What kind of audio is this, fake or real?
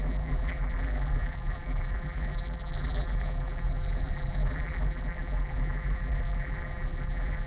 fake